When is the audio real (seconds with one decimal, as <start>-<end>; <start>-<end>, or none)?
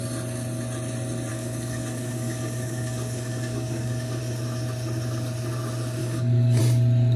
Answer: 0.0-1.3; 4.2-6.0; 6.6-7.2